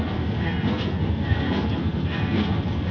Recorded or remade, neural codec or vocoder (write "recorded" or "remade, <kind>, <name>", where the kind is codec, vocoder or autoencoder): remade, codec, SNAC